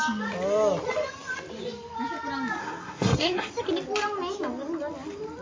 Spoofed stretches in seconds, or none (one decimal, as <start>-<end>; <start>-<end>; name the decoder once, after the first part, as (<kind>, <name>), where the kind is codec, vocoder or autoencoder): 2.6-3.5 (codec, SNAC)